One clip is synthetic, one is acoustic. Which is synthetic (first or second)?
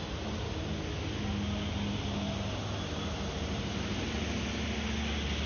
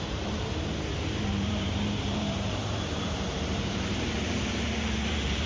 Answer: second